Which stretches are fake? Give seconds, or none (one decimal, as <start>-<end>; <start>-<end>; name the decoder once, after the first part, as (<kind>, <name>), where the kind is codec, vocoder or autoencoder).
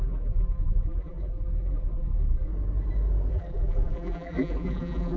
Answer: 0.0-2.5 (vocoder, BigVGAN v2); 3.3-5.2